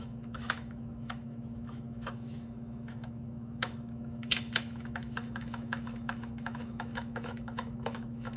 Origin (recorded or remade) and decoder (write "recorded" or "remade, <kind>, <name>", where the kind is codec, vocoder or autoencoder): remade, autoencoder, DAC-VAE